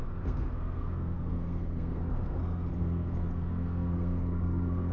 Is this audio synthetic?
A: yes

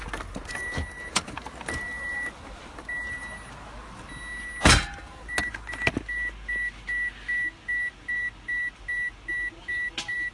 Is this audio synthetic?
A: no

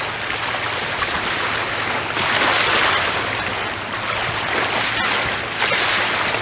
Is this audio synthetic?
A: no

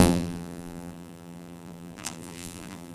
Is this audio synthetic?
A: yes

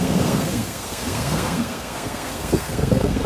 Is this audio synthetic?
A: yes